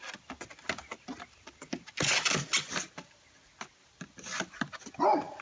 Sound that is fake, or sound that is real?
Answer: real